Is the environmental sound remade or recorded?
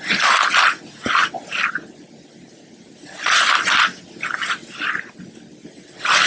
recorded